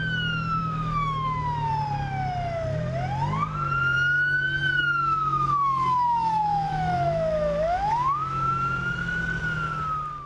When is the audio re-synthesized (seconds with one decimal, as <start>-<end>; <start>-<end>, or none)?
0.6-1.7; 4.8-9.2